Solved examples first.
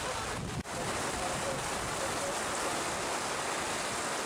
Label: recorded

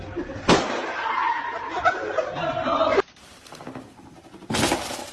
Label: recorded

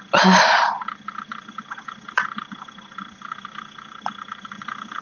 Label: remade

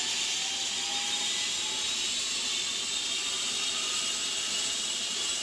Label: recorded